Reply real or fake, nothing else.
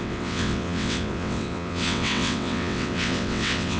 fake